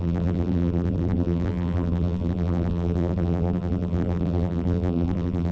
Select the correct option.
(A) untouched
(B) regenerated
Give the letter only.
B